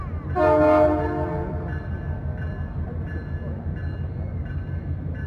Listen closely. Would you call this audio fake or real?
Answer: real